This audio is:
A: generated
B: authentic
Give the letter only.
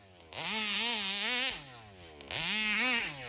B